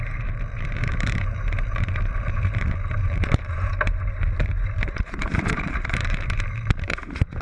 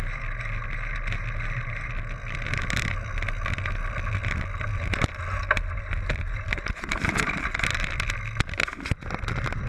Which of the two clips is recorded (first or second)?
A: second